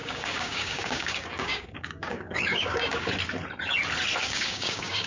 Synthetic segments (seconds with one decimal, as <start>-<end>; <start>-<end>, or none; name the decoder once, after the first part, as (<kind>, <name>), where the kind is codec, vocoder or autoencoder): 0.0-3.1 (codec, DAC); 4.2-5.1